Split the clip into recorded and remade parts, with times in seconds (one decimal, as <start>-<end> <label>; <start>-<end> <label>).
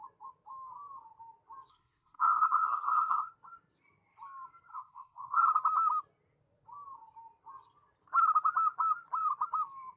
0.0-1.7 recorded; 1.7-3.3 remade; 3.3-4.7 recorded; 4.7-5.4 remade; 5.4-10.0 recorded